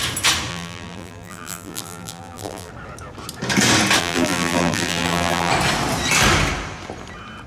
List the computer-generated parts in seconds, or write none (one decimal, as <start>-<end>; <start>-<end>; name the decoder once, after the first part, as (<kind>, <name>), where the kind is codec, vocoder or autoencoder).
0.5-2.7 (vocoder, BigVGAN v2); 4.0-5.5